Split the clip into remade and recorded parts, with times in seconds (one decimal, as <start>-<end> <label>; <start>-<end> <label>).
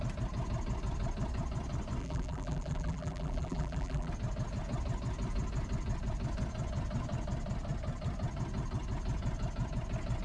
0.0-2.0 recorded; 2.0-4.1 remade; 4.1-10.2 recorded